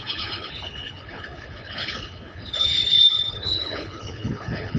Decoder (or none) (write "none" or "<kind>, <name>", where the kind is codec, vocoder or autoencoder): codec, HILCodec